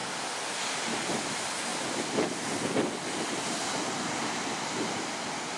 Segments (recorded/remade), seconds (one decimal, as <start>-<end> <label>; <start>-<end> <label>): 0.0-1.7 recorded; 1.7-2.7 remade; 2.7-5.6 recorded